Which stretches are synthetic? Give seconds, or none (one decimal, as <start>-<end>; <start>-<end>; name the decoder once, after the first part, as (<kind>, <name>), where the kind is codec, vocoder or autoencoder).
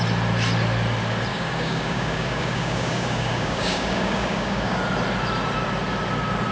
1.3-4.8 (codec, DAC)